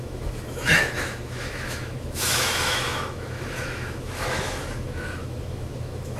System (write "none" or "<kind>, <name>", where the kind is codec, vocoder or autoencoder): autoencoder, DAC-VAE